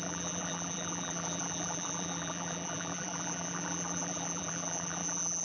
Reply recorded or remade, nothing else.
remade